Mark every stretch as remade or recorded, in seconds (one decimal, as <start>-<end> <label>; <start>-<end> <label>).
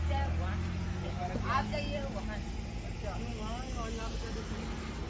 0.0-5.1 recorded